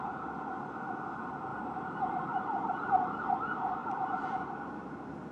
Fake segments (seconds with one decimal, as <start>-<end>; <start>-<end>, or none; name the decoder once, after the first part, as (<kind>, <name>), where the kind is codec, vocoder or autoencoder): 1.5-3.3 (vocoder, BigVGAN v2); 3.8-4.5